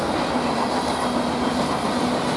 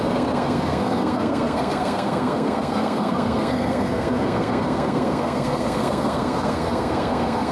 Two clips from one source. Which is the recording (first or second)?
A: first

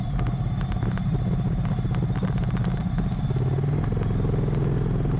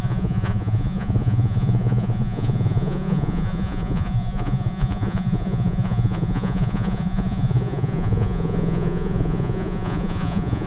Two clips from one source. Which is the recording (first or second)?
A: first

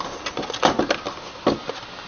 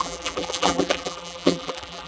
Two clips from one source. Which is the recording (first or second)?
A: first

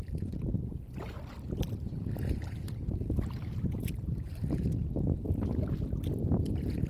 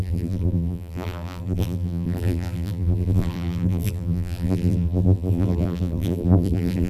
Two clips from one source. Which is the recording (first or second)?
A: first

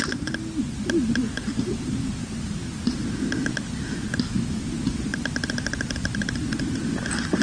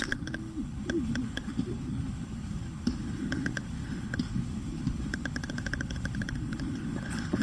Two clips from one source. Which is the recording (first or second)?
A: first